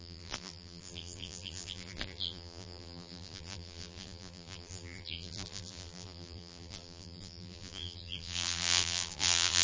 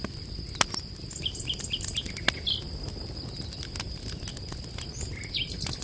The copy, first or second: first